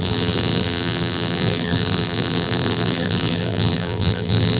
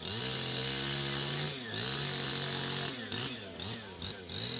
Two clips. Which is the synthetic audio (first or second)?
first